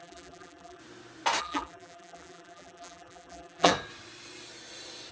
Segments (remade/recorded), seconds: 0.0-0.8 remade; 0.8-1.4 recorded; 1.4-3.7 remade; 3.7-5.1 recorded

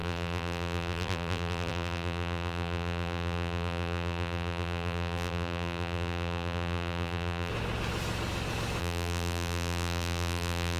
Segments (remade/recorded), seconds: 0.0-7.5 remade; 7.5-8.8 recorded; 8.8-10.8 remade

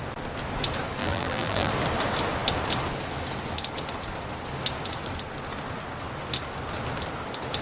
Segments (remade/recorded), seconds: 0.0-1.0 recorded; 1.0-1.7 remade; 1.7-7.6 recorded

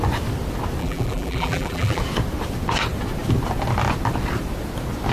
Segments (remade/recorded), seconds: 0.0-0.8 recorded; 0.8-2.0 remade; 2.0-5.1 recorded